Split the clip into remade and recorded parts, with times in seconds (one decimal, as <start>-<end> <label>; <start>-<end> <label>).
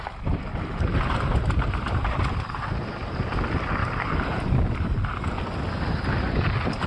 0.0-0.5 recorded; 0.5-2.5 remade; 2.5-3.8 recorded; 3.8-4.9 remade; 4.9-6.9 recorded